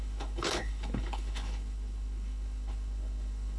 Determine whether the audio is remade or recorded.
remade